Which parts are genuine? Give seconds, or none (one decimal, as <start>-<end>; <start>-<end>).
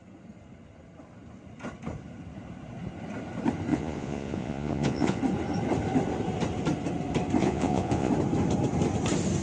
0.0-3.7; 5.2-7.4; 8.1-9.4